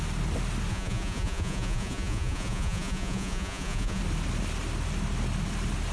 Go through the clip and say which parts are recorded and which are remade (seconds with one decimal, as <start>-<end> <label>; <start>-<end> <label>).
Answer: 0.0-0.7 recorded; 0.7-4.0 remade; 4.0-5.9 recorded